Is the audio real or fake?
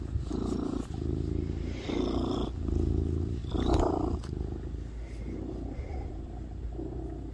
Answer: real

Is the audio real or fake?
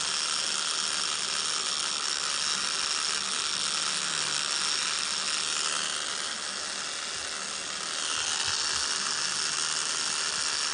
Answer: real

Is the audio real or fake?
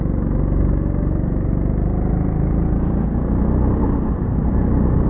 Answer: real